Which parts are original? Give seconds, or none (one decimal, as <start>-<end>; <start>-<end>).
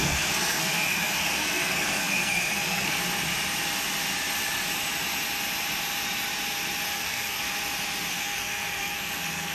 3.0-6.9; 7.4-8.1